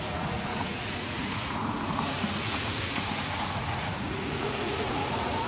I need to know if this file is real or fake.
fake